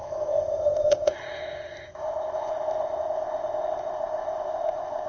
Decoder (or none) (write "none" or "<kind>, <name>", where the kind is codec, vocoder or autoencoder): codec, ZipCodec